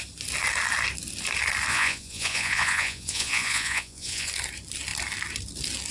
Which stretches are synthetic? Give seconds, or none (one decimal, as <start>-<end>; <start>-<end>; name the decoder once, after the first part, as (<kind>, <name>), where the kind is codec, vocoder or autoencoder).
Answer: 1.7-4.3 (vocoder, Vocos)